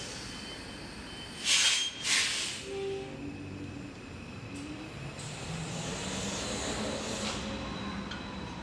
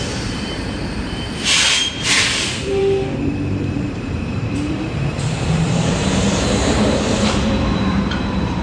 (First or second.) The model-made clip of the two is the second